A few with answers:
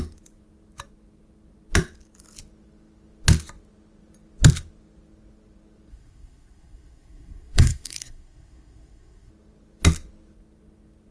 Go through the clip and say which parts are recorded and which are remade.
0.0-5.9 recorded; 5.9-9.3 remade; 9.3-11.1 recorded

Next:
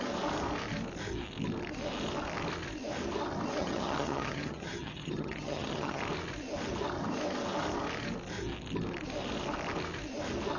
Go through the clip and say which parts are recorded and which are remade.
0.0-3.6 recorded; 3.6-6.0 remade; 6.0-10.6 recorded

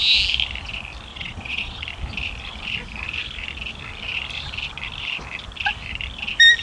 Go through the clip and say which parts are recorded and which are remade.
0.0-1.1 recorded; 1.1-1.8 remade; 1.8-6.6 recorded